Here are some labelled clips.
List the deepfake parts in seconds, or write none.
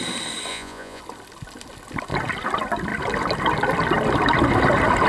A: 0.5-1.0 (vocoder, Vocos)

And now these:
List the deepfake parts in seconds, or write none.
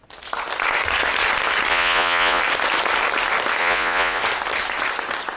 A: 1.7-2.4 (vocoder, Vocos); 3.6-4.2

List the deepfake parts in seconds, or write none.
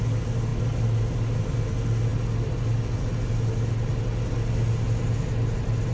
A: none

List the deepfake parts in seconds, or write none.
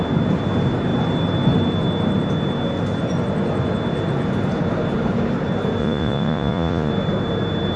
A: 5.8-6.9 (vocoder, Vocos)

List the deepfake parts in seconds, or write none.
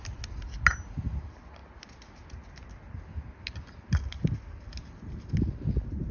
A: none